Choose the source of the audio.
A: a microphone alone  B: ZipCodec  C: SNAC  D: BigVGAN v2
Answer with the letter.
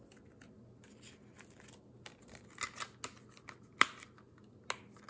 A